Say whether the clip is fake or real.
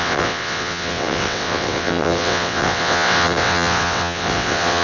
fake